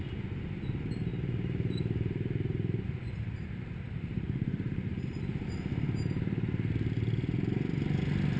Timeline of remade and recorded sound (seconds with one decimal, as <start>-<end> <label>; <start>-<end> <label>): 0.0-1.1 recorded; 1.1-5.5 remade; 5.5-8.4 recorded